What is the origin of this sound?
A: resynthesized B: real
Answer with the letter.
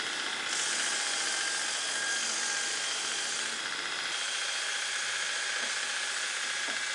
B